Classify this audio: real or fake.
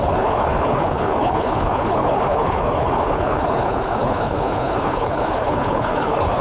fake